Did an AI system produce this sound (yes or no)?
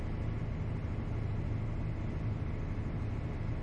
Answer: no